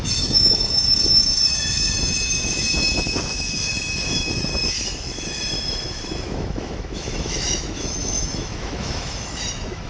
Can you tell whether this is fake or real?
fake